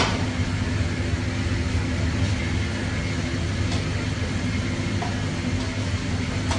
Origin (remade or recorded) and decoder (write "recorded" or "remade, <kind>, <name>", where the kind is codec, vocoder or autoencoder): recorded